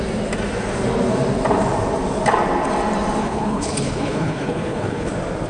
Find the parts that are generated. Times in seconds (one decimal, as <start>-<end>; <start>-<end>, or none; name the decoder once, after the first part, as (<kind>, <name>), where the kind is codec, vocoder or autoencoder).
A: 3.2-5.1 (codec, HILCodec)